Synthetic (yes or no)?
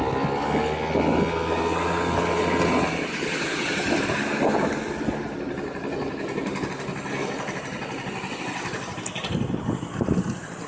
no